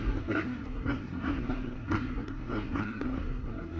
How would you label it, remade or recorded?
remade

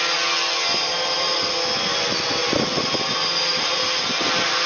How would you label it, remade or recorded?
recorded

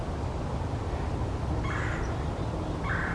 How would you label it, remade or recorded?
recorded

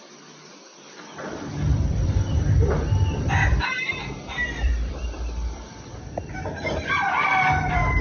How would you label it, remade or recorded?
remade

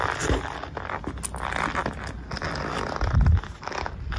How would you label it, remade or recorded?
recorded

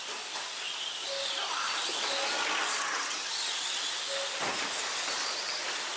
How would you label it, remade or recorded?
recorded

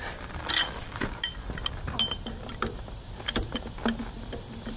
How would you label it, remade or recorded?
recorded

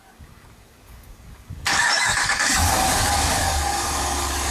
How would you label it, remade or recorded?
remade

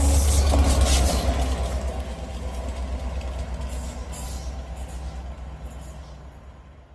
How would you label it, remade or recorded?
recorded